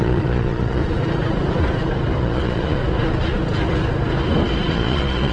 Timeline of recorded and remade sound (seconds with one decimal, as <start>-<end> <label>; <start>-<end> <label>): 0.0-0.8 remade; 0.8-2.2 recorded; 2.2-2.8 remade; 2.8-4.7 recorded; 4.7-5.3 remade